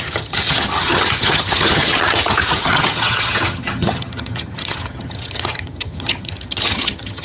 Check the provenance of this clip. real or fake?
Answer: fake